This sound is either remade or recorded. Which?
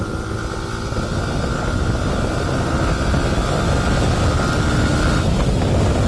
recorded